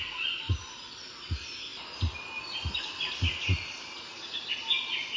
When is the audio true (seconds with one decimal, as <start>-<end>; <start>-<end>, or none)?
0.0-5.2